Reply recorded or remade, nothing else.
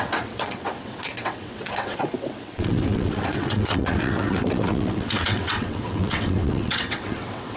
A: remade